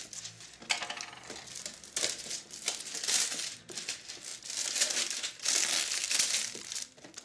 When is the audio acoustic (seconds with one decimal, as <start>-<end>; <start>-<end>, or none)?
0.0-7.2